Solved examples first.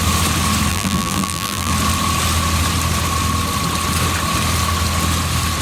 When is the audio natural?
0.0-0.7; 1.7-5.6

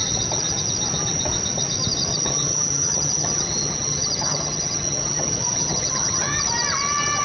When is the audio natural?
0.0-2.1; 6.4-7.2

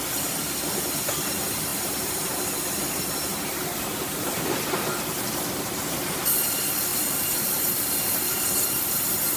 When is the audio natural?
0.0-1.7; 2.4-3.3; 4.4-6.9; 7.8-9.4

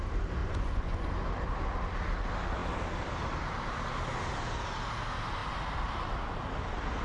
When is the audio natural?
0.0-0.4; 1.1-7.0

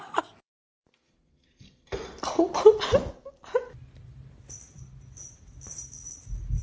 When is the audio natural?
0.0-6.6

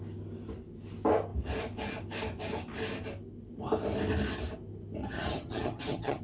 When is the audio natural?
0.0-5.0